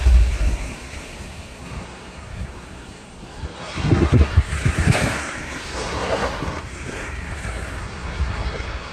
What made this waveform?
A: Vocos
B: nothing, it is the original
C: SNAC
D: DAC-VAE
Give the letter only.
C